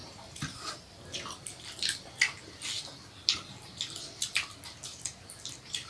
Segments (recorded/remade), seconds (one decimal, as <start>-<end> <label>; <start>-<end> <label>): 0.0-0.7 remade; 0.7-5.9 recorded

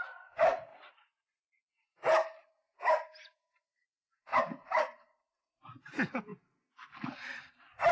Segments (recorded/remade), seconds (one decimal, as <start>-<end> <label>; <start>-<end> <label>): 0.0-7.9 recorded